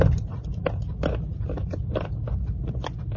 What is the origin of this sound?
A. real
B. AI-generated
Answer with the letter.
A